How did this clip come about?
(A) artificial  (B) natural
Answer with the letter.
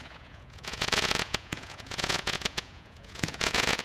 A